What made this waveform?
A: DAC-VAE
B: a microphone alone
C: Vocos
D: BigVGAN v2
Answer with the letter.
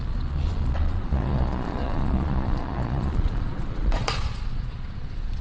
C